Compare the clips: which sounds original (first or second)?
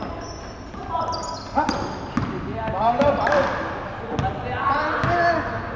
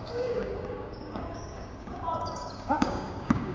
first